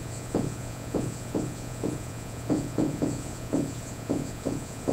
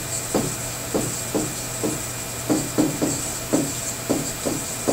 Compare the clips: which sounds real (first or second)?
second